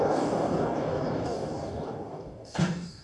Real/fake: fake